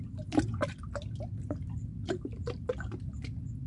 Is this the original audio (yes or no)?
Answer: yes